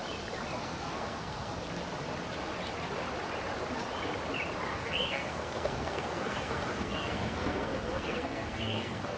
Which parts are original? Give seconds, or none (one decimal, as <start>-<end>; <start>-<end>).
0.0-0.6; 1.5-4.7